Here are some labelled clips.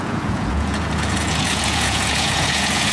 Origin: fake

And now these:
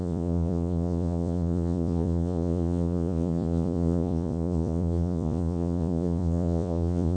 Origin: fake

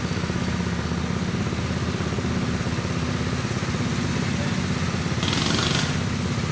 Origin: real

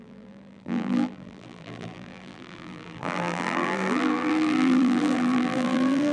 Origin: fake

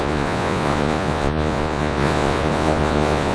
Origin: fake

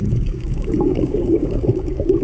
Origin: fake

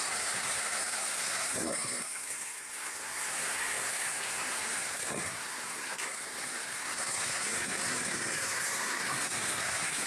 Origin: fake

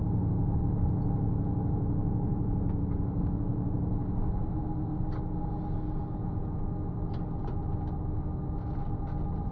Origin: real